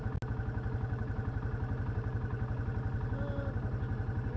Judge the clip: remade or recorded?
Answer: recorded